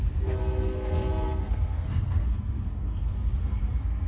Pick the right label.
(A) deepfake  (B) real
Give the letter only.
A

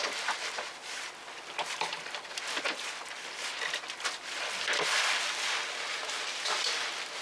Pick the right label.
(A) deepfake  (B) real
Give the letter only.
B